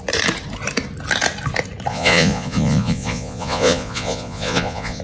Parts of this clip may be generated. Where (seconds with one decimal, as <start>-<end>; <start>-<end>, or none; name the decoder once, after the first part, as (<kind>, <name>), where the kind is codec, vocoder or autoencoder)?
1.9-5.0 (vocoder, Vocos)

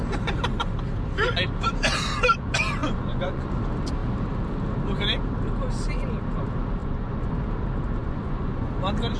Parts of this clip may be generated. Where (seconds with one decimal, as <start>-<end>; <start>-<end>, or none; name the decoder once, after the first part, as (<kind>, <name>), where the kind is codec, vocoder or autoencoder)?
2.8-3.5 (vocoder, Vocos); 6.8-7.3; 8.0-8.7